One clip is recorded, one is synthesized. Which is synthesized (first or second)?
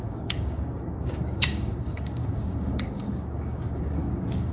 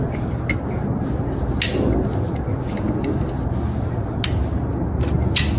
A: first